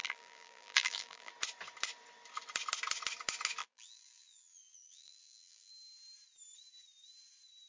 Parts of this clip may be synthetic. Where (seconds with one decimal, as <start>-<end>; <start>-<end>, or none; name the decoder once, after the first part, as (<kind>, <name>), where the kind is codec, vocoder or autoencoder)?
0.0-1.3 (vocoder, BigVGAN v2); 3.6-5.7